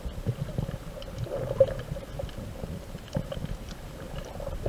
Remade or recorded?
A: recorded